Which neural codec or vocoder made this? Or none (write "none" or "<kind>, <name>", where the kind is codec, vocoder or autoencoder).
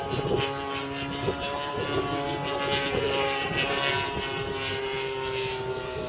none